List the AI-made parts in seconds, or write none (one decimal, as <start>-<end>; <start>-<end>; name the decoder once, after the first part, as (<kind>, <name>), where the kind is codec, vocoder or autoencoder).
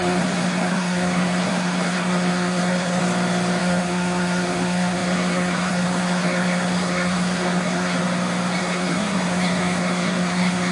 0.0-3.0 (codec, SNAC); 3.6-8.0; 8.6-10.7